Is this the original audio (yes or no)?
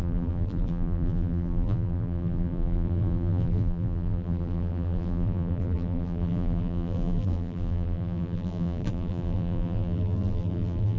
no